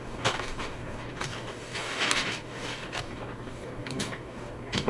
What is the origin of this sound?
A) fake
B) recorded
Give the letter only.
A